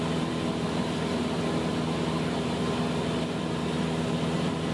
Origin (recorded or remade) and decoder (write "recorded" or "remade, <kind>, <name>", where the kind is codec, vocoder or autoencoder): recorded